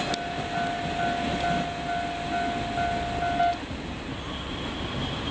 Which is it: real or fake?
real